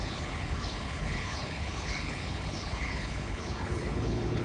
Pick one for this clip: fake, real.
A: fake